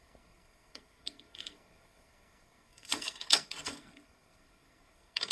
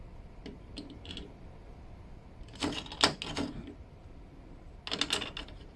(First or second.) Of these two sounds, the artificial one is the first